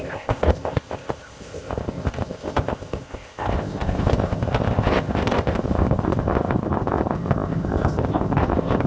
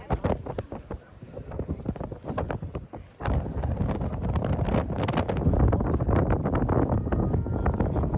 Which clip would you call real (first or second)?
second